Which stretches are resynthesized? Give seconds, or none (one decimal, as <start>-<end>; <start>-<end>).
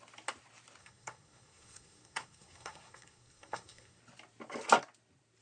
0.8-4.0